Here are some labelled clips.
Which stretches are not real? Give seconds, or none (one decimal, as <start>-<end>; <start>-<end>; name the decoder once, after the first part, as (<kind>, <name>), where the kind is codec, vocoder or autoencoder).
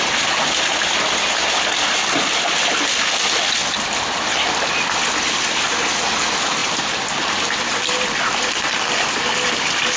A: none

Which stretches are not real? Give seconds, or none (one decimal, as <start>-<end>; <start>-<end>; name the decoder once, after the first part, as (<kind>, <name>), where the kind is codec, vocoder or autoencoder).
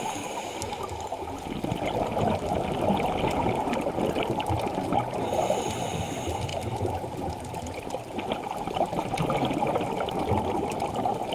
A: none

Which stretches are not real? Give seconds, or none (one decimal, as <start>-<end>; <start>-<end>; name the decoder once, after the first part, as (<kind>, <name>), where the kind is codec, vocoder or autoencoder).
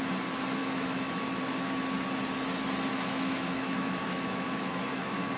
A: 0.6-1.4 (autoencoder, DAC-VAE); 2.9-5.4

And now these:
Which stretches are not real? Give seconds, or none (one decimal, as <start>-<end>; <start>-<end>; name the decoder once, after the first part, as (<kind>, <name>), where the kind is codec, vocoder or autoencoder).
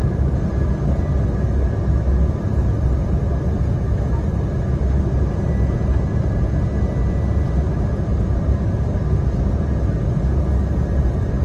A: none